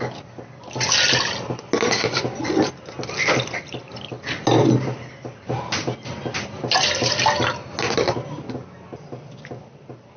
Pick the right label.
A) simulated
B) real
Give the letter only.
B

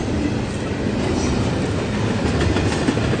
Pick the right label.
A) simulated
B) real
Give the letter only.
B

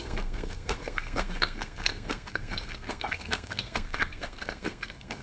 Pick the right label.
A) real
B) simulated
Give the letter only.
B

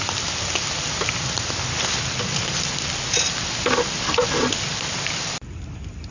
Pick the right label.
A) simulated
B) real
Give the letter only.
B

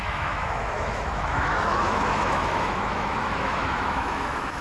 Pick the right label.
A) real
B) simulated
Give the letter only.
B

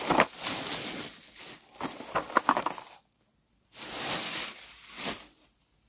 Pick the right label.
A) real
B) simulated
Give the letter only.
A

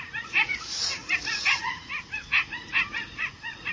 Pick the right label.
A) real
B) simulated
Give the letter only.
B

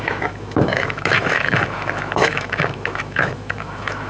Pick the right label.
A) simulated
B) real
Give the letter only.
A